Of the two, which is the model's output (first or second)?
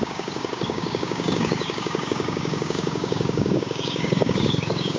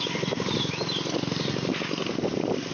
first